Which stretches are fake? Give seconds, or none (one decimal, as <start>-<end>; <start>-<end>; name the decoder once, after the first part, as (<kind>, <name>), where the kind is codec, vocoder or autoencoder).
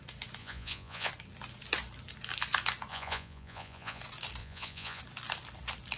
0.4-1.1 (vocoder, Vocos); 2.9-4.0; 4.4-5.0